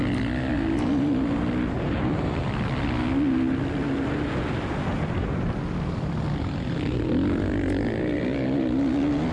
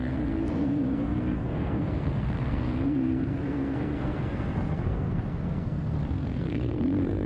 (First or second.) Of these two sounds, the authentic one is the first